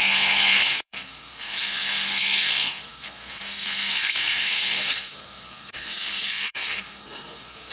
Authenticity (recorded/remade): remade